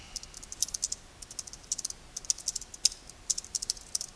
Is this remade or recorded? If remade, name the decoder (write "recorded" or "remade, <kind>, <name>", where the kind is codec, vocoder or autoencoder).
recorded